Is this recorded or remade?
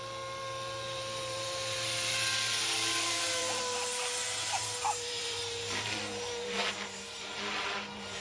remade